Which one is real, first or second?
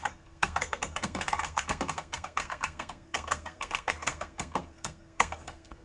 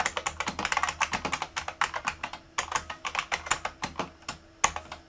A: second